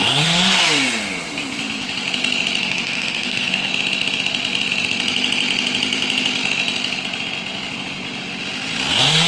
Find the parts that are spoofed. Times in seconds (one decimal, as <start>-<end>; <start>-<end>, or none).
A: 0.0-0.6; 2.6-3.7; 8.9-9.3